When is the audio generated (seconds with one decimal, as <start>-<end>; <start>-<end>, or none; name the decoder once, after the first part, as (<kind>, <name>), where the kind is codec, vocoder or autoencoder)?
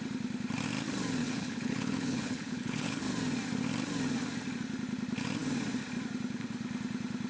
1.2-3.0 (codec, HILCodec)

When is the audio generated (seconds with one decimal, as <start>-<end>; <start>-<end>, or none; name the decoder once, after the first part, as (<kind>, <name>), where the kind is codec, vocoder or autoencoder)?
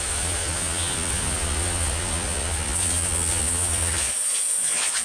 0.0-5.0 (vocoder, Vocos)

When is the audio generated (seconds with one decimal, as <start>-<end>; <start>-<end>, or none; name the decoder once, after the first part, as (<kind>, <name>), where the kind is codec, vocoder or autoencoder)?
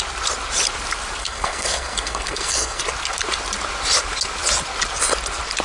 1.2-2.8 (codec, SNAC)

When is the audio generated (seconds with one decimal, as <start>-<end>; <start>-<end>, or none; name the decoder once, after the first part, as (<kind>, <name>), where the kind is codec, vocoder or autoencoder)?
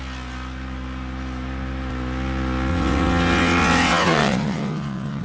2.7-5.2 (vocoder, WaveNeXt)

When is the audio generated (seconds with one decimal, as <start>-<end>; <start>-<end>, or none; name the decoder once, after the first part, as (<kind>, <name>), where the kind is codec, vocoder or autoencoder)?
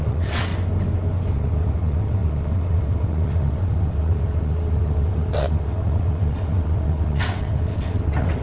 0.0-0.5 (vocoder, WaveNeXt); 1.3-8.4